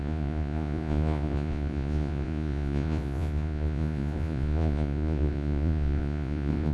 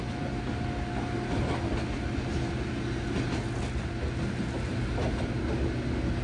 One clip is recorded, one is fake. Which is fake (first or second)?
first